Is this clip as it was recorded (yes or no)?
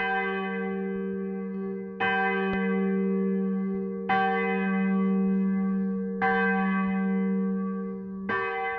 yes